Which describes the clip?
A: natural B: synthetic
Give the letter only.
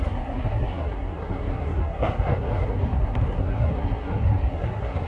B